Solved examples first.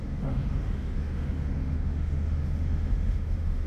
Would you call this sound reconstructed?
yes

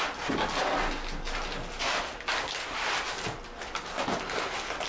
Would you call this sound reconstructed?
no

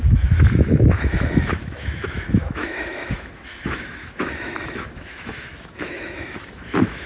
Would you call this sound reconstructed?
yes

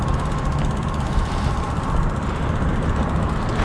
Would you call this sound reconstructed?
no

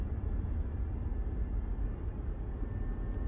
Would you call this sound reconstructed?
no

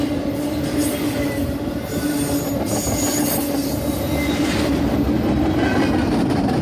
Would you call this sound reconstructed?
no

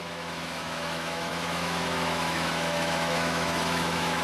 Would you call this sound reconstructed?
yes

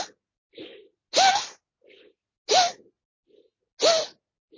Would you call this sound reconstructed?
no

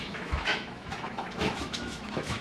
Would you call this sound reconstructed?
yes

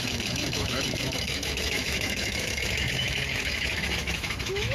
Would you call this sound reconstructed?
yes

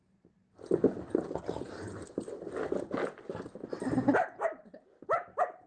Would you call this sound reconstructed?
no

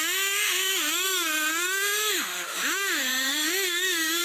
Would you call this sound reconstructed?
yes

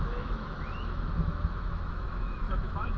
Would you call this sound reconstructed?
yes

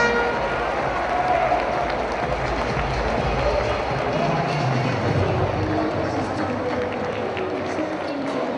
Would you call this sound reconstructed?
no